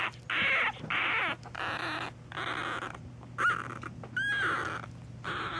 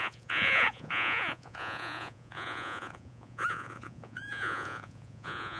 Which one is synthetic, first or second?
second